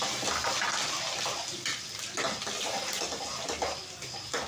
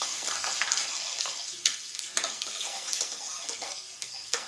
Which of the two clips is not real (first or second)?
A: second